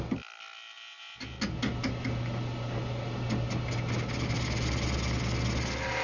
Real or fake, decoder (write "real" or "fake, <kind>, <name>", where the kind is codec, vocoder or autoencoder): real